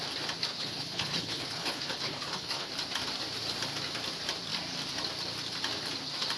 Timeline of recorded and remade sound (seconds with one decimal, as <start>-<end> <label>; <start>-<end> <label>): 0.0-0.5 recorded; 0.5-2.7 remade; 2.7-6.4 recorded